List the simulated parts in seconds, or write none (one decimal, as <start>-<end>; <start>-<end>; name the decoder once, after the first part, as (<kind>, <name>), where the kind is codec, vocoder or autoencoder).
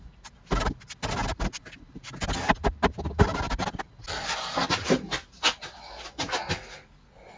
none